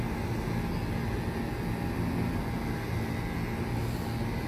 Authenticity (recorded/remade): recorded